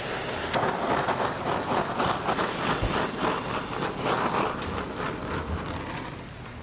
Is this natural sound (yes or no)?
yes